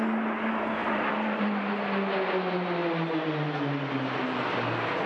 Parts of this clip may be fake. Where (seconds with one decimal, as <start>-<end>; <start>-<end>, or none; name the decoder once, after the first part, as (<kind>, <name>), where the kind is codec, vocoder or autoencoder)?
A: 0.8-1.7 (vocoder, BigVGAN v2)